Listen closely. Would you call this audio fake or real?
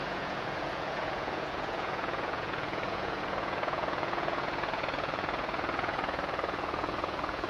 fake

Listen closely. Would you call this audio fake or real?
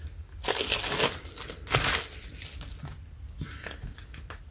real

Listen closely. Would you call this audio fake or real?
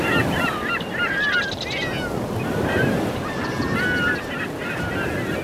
real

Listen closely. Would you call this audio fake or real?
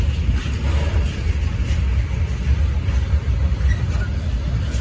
real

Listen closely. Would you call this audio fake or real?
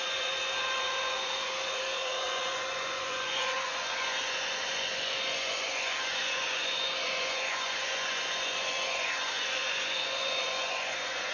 fake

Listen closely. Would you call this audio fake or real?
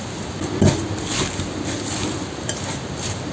real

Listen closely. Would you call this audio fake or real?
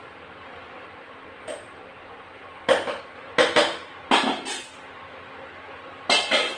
real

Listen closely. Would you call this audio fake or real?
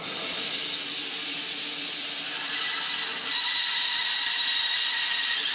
real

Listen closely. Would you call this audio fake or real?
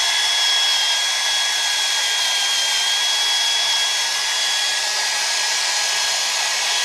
real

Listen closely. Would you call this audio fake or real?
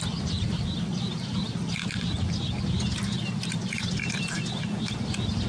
real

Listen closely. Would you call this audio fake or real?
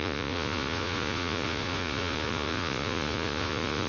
fake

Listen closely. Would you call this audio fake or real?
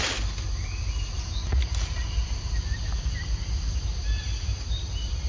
real